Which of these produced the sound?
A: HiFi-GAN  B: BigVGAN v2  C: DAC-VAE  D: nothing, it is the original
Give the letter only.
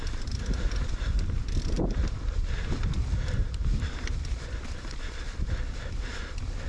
B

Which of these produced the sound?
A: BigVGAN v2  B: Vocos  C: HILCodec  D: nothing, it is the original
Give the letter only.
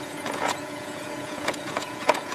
B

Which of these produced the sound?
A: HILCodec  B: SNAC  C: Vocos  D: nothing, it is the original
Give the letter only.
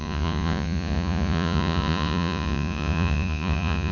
C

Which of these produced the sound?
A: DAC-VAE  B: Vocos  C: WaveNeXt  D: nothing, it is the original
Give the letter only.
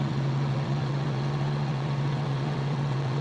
C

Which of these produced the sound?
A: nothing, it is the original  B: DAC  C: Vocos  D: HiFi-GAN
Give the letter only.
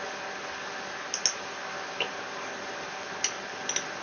A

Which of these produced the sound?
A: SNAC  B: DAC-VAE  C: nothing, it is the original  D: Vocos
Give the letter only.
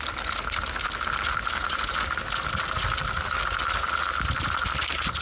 C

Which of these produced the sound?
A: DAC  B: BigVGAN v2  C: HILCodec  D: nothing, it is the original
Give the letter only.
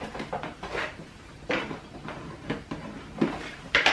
B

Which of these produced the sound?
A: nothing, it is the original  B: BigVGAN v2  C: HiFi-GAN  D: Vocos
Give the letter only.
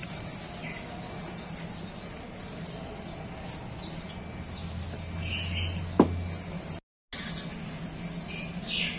A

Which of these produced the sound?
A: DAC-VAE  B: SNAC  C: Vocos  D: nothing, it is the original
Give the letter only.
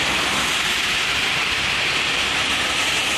D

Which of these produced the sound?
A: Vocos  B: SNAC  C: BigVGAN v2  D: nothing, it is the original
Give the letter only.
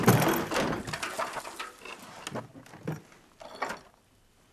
D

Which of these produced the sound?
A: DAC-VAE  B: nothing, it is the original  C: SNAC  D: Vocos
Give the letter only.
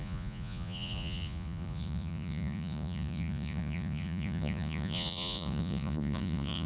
D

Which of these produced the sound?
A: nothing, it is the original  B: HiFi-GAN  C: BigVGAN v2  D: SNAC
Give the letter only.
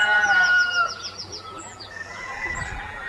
C